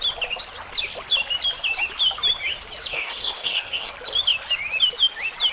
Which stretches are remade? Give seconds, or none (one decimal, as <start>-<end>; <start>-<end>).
2.9-3.9